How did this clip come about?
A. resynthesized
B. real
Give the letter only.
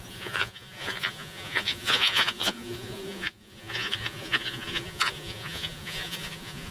A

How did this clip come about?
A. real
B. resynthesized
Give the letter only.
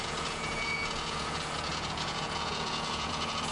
B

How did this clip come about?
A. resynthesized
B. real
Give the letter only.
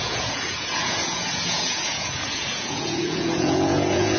A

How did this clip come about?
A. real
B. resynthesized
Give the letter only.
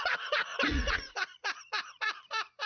B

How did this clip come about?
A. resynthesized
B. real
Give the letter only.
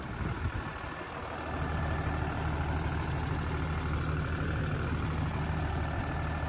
B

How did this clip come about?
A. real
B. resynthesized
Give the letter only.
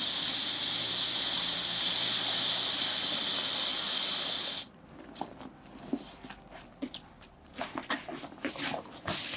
A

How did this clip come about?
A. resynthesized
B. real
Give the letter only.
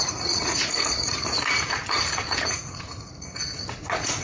A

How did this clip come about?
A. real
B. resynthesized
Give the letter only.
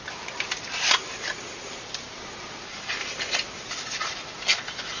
A